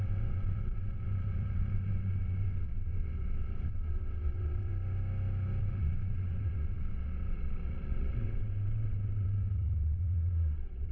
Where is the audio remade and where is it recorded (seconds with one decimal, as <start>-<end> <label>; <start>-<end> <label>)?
0.0-4.7 remade; 4.7-5.6 recorded; 5.6-10.9 remade